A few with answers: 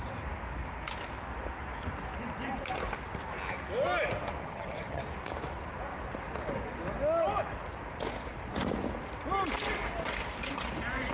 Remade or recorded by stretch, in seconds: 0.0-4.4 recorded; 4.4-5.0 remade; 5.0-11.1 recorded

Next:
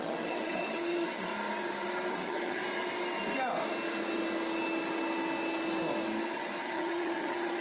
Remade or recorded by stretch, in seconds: 0.0-1.3 remade; 1.3-2.1 recorded; 2.1-2.6 remade; 2.6-6.6 recorded; 6.6-7.6 remade

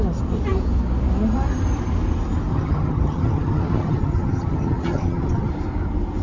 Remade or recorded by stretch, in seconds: 0.0-2.5 recorded; 2.5-5.5 remade; 5.5-6.2 recorded

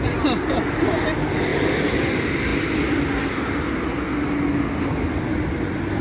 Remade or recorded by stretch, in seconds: 0.0-6.0 recorded

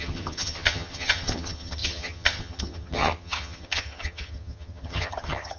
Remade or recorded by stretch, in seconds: 0.0-5.6 remade

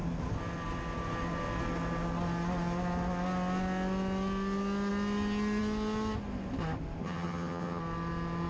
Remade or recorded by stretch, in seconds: 0.0-7.0 recorded; 7.0-7.8 remade; 7.8-8.5 recorded

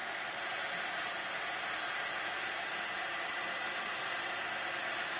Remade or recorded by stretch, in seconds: 0.0-5.2 recorded